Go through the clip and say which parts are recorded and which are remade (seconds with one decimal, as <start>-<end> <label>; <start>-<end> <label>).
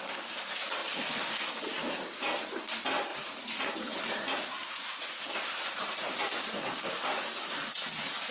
0.0-3.1 recorded; 3.1-6.2 remade; 6.2-8.3 recorded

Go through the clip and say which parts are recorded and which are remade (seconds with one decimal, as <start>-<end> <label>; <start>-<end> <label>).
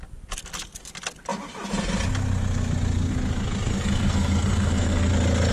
0.0-3.7 recorded; 3.7-5.1 remade; 5.1-5.5 recorded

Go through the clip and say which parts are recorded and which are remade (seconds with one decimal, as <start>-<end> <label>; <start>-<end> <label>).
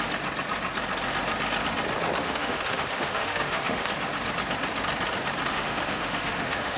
0.0-2.2 recorded; 2.2-3.9 remade; 3.9-5.5 recorded; 5.5-6.8 remade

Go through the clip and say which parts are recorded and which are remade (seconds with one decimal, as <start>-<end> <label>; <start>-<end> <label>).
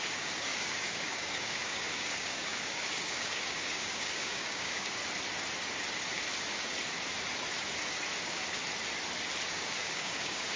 0.0-5.0 remade; 5.0-8.2 recorded; 8.2-8.6 remade; 8.6-9.5 recorded; 9.5-10.6 remade